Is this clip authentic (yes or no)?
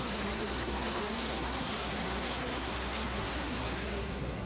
no